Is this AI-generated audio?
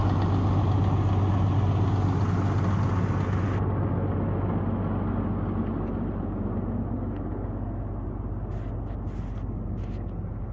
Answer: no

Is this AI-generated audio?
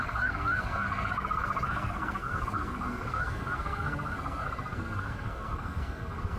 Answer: yes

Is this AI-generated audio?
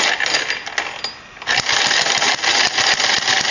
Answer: no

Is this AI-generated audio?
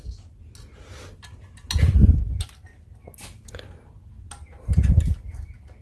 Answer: no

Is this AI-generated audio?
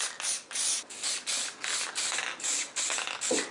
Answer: no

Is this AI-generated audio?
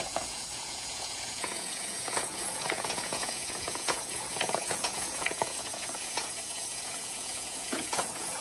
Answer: yes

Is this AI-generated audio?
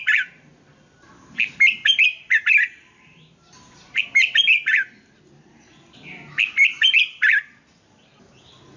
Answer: no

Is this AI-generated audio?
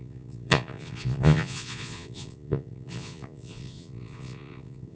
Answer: yes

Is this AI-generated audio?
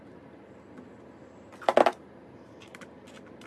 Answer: no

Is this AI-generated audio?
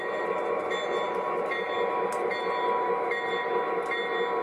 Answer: no